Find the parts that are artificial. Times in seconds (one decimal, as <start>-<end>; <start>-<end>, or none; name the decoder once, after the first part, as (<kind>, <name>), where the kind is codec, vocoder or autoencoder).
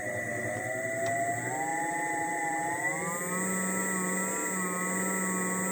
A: none